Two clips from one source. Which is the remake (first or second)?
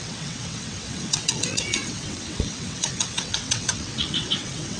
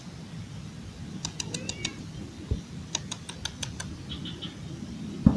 first